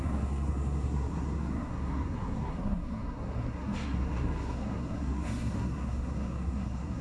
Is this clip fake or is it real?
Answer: fake